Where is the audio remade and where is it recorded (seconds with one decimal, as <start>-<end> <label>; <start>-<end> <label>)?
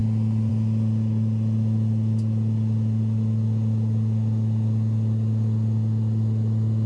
0.0-6.9 recorded